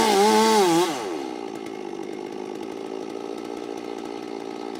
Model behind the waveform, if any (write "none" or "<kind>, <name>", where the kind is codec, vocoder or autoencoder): none